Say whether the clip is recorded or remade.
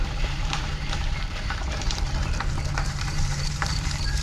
remade